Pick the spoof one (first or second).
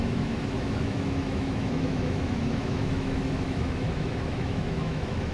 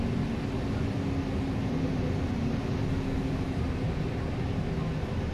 first